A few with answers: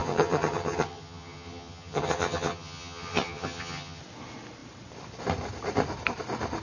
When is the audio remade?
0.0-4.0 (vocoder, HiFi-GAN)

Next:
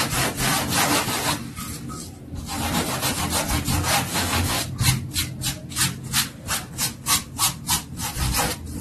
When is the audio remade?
4.1-4.6 (autoencoder, DAC-VAE)

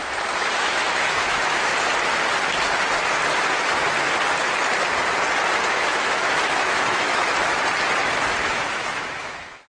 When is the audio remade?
0.6-1.7 (autoencoder, DAC-VAE); 5.7-7.2; 8.4-9.7